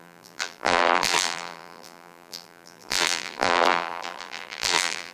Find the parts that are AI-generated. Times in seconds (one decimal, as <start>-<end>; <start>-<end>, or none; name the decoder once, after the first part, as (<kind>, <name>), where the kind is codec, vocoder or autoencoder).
0.0-5.1 (vocoder, BigVGAN v2)